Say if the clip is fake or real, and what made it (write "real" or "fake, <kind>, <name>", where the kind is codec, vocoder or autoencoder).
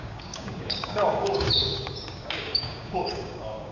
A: fake, codec, DAC